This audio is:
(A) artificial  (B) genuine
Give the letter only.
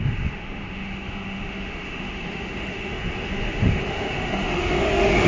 A